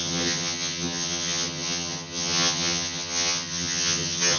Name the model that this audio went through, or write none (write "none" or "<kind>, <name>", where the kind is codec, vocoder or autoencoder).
vocoder, HiFi-GAN